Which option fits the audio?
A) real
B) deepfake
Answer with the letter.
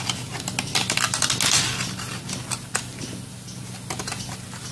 A